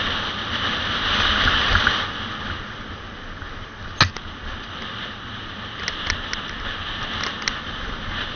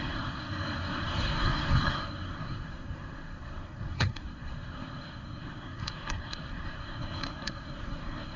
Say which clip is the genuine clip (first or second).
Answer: first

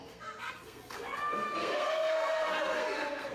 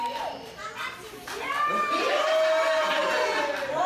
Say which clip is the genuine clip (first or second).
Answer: second